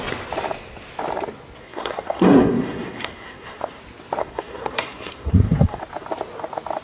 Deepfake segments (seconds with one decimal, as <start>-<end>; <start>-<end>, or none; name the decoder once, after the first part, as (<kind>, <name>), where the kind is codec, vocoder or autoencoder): 1.6-3.8 (codec, SNAC); 4.2-5.8

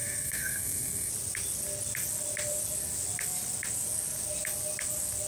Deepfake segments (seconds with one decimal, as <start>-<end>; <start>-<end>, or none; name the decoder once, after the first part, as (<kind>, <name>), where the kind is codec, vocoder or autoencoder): 0.0-1.1 (codec, SNAC)

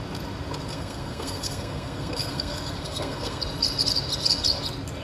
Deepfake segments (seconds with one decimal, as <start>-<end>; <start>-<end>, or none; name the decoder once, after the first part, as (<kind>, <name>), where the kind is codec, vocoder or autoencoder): 0.7-3.4 (codec, SNAC)

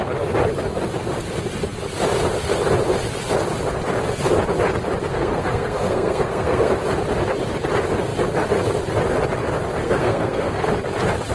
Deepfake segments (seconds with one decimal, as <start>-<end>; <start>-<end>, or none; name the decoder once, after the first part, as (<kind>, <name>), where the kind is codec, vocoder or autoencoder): 5.1-6.7 (codec, SNAC); 9.8-10.7

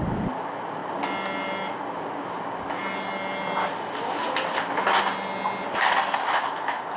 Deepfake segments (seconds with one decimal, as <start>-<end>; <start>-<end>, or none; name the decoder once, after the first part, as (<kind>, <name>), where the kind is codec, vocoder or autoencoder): none

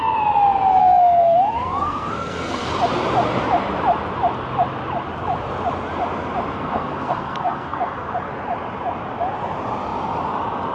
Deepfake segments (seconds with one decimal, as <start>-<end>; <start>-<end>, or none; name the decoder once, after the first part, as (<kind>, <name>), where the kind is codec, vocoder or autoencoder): 0.8-2.7 (codec, SNAC); 6.5-8.1